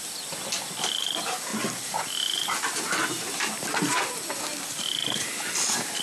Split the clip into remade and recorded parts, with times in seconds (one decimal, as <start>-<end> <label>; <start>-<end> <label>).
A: 0.0-6.0 recorded